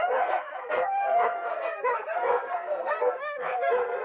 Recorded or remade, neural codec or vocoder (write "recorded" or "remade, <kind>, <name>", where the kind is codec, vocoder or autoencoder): remade, codec, SNAC